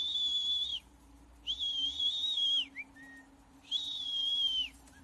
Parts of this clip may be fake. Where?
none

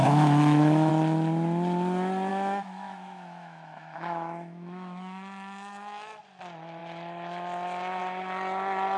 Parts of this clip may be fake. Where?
0.0-0.9 (autoencoder, DAC-VAE); 2.3-6.2

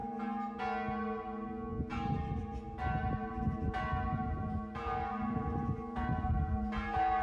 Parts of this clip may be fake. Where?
none

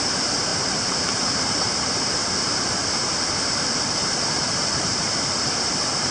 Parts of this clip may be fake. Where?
0.5-1.7 (vocoder, BigVGAN v2); 2.2-6.1

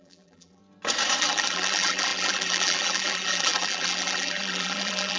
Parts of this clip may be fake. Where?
0.0-0.6 (vocoder, BigVGAN v2); 1.2-5.2